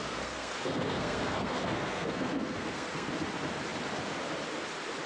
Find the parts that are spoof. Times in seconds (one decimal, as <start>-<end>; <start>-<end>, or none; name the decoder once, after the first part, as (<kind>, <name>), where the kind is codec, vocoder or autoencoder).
0.0-3.1 (codec, SNAC)